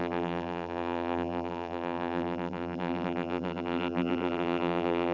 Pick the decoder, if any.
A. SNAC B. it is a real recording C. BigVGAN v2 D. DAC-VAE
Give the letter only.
C